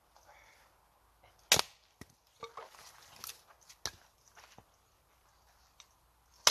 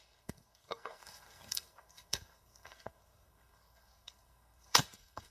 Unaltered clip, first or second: first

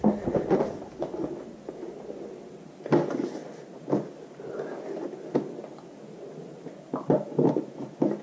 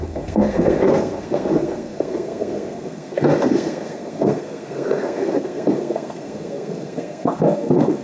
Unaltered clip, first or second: first